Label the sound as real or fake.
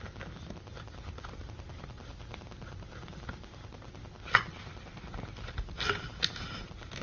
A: real